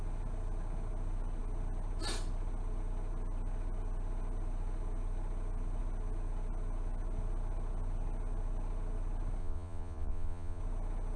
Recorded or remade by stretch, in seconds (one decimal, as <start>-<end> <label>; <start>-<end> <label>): 0.0-9.4 recorded; 9.4-10.6 remade; 10.6-11.2 recorded